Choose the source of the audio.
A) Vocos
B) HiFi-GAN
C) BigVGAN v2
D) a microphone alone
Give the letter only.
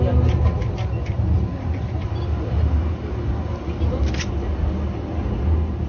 D